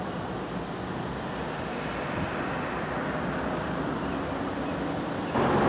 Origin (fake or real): real